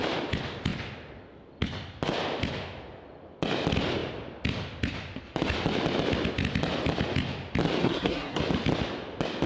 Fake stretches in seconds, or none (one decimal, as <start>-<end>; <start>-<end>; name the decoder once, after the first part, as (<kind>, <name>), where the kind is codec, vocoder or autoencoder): 7.8-8.4 (codec, SNAC)